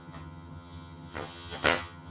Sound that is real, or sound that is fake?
fake